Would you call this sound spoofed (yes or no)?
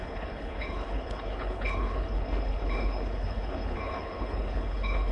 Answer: yes